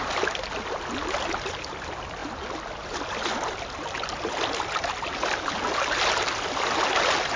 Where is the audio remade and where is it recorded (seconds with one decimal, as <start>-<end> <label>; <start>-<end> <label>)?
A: 0.0-7.4 recorded